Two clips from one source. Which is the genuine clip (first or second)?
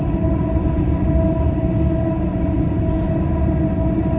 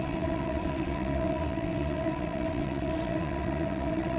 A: first